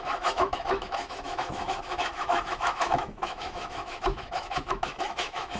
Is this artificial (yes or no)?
yes